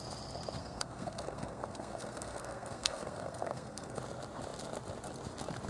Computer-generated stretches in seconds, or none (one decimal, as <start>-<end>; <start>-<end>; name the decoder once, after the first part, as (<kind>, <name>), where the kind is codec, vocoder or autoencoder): 0.6-4.0 (codec, SNAC)